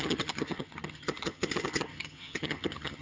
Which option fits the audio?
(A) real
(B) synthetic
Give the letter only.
B